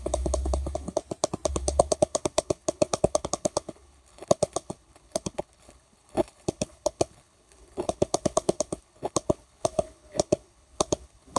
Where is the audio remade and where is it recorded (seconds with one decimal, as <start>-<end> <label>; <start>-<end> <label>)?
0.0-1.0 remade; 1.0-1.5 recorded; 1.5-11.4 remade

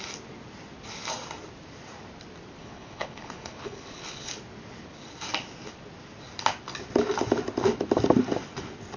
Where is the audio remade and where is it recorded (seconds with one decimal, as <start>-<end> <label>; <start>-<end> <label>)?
0.0-2.6 recorded; 2.6-4.3 remade; 4.3-9.0 recorded

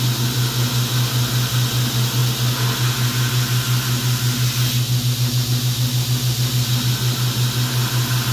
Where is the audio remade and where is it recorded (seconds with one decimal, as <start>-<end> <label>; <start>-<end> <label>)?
0.0-8.3 recorded

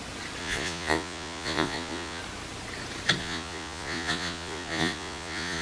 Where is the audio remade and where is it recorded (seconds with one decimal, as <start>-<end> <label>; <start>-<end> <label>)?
0.0-0.4 recorded; 0.4-2.2 remade; 2.2-3.2 recorded; 3.2-5.6 remade

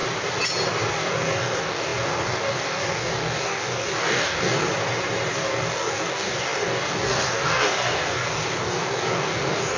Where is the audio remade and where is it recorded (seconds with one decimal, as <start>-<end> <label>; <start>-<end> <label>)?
0.0-0.9 recorded; 0.9-4.7 remade; 4.7-5.3 recorded; 5.3-9.8 remade